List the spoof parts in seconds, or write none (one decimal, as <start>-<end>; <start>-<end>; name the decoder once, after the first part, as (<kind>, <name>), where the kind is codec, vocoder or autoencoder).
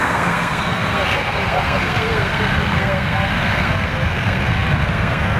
0.0-5.4 (codec, SNAC)